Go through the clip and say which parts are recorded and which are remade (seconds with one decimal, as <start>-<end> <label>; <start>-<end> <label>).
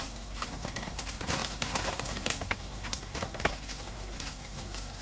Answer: 0.0-5.0 remade